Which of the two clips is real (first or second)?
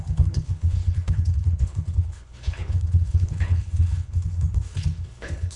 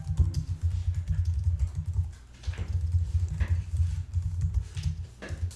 second